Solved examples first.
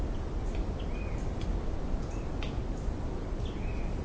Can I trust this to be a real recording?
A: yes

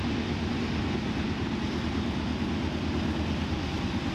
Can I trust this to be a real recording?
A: yes